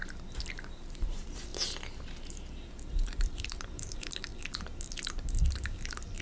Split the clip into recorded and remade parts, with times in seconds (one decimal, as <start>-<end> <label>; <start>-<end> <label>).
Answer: 0.0-0.5 recorded; 0.5-1.5 remade; 1.5-2.3 recorded; 2.3-4.3 remade; 4.3-6.2 recorded